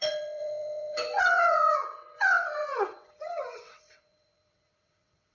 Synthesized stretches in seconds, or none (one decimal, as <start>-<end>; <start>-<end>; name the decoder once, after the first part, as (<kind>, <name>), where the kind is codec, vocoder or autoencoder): 0.0-5.3 (vocoder, WaveNeXt)